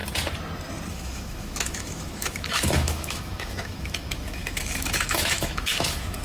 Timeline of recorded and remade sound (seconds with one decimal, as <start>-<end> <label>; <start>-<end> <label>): 0.0-0.9 recorded; 0.9-6.2 remade